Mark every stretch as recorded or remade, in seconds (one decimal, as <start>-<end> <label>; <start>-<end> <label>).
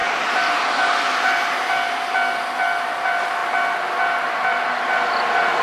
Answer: 0.0-0.6 remade; 0.6-5.6 recorded